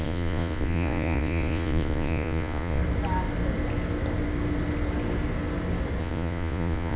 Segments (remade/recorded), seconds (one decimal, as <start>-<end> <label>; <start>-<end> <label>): 0.0-2.8 remade; 2.8-6.0 recorded; 6.0-7.0 remade